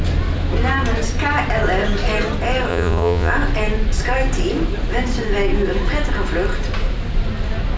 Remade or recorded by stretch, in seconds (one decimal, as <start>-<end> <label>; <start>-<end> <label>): 0.0-2.7 recorded; 2.7-3.3 remade; 3.3-7.8 recorded